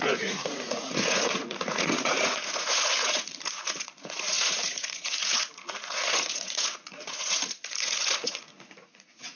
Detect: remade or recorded remade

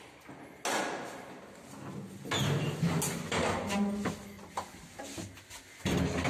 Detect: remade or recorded recorded